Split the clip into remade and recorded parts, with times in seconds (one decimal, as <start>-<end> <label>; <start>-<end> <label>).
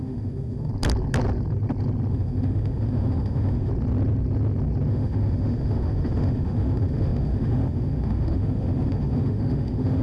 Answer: 0.0-0.7 remade; 0.7-2.1 recorded; 2.1-3.7 remade; 3.7-4.9 recorded; 4.9-10.0 remade